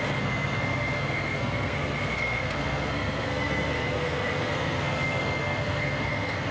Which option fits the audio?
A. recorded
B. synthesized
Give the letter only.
B